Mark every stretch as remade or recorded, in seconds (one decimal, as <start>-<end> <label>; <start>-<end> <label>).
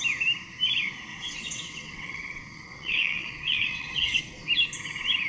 0.0-1.1 recorded; 1.1-4.2 remade; 4.2-5.3 recorded